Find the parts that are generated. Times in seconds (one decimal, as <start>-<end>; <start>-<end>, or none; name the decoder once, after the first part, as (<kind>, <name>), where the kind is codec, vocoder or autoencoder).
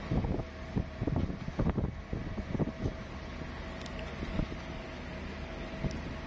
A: none